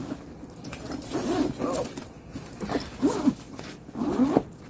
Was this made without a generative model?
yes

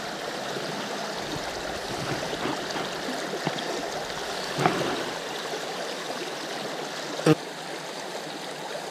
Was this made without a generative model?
yes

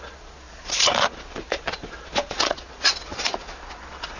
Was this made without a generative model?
no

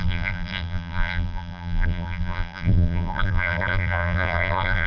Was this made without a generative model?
no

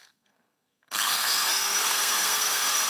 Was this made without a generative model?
no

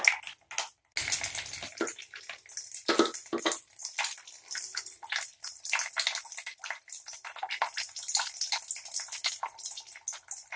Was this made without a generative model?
yes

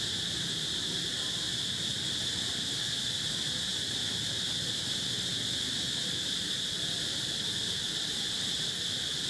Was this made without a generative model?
yes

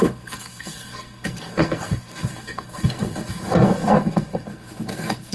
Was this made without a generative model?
no